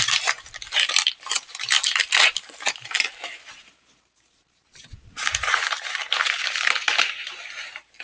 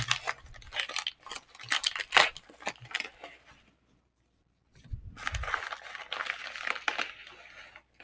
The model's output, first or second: first